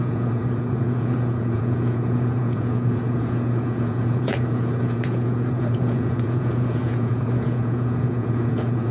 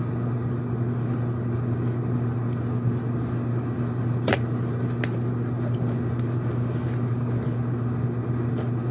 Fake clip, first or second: first